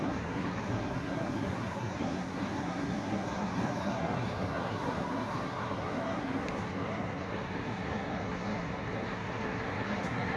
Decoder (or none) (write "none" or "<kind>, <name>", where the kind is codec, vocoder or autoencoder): codec, SNAC